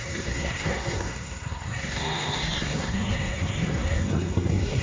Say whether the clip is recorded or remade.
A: remade